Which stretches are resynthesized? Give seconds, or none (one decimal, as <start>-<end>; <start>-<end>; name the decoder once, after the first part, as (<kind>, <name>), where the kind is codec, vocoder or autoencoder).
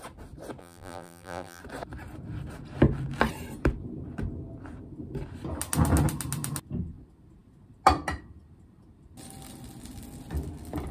0.6-1.6 (vocoder, BigVGAN v2)